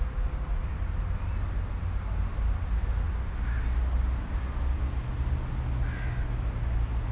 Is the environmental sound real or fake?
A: real